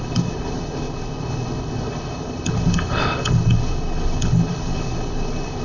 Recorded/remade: remade